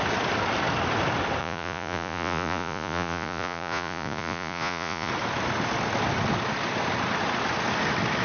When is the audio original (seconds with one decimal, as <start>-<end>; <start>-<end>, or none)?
0.0-1.4; 5.1-8.2